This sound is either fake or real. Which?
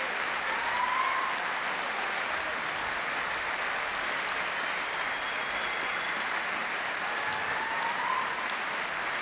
real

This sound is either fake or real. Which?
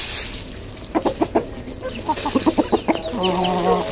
real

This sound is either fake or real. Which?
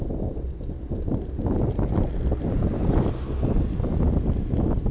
real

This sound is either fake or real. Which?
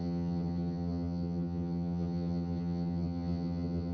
fake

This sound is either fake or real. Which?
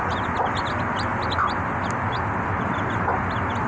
real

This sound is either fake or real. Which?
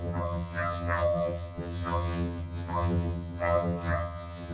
fake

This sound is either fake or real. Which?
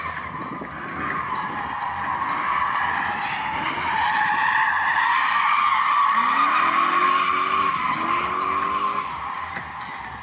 real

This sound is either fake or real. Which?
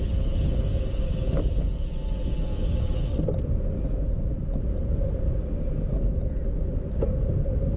real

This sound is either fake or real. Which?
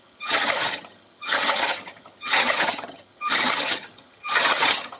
fake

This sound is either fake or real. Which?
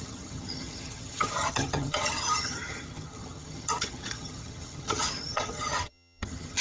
fake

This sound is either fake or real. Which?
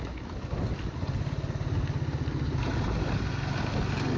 real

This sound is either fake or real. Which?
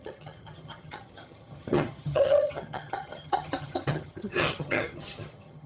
fake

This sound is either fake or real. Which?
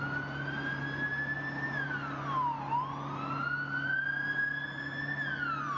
real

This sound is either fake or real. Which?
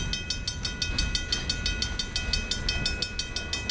real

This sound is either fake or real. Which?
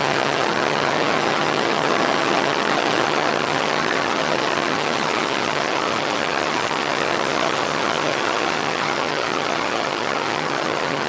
fake